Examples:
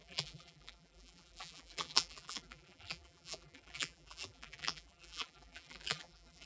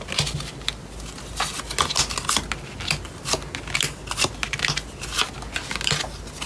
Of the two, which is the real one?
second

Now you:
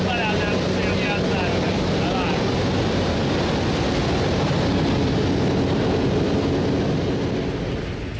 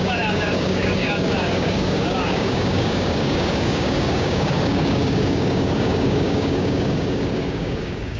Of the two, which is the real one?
first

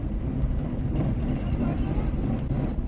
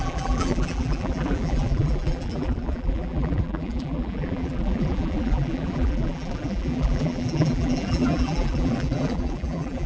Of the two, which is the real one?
first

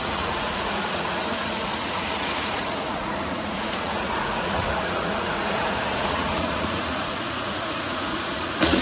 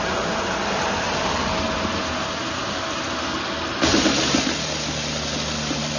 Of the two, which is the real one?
second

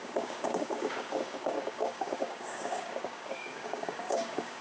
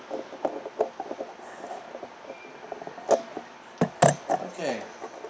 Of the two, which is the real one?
second